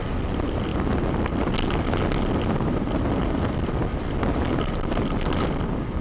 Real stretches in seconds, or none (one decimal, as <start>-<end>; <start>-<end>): 0.0-6.0